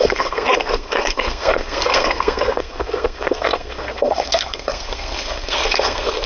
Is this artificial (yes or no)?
yes